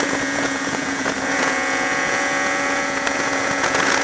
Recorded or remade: remade